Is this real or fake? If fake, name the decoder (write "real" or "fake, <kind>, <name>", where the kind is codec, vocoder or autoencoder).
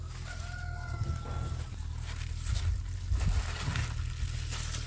real